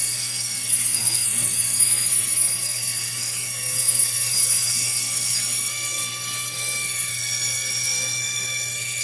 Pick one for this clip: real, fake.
fake